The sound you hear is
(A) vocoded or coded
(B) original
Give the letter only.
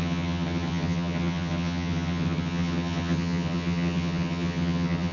A